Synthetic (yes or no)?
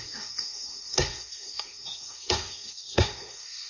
yes